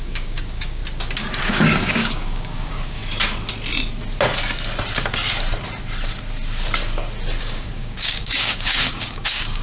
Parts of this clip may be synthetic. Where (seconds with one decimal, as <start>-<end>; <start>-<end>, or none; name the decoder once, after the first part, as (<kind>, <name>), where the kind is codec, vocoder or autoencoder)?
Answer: 0.0-0.8 (codec, DAC); 1.4-3.0; 7.4-9.6